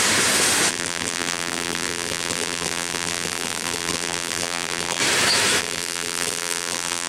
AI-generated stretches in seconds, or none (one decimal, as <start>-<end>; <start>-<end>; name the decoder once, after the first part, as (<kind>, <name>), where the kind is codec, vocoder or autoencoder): 0.7-5.0 (vocoder, BigVGAN v2); 5.6-7.1